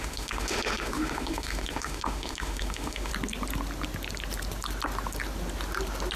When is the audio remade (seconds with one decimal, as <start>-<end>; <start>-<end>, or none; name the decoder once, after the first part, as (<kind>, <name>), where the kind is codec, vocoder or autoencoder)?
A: 0.0-3.1 (autoencoder, DAC-VAE)